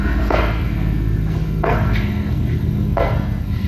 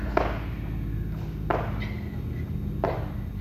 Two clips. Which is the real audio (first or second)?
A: second